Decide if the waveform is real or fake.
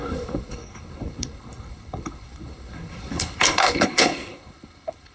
fake